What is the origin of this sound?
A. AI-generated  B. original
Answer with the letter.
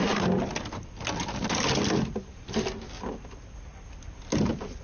B